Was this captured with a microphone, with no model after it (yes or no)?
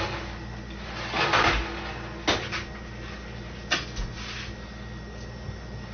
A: yes